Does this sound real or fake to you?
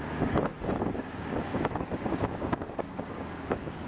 fake